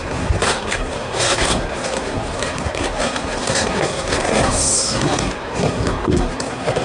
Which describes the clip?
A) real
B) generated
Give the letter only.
B